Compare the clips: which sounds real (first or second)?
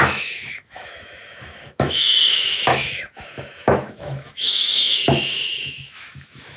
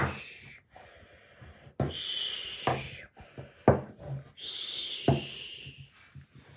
second